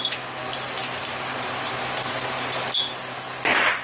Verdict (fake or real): real